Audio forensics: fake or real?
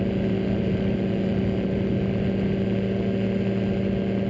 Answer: real